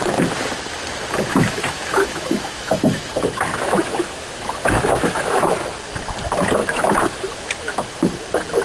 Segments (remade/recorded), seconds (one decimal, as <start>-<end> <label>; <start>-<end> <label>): 0.0-1.3 recorded; 1.3-5.5 remade; 5.5-6.6 recorded; 6.6-8.2 remade; 8.2-8.6 recorded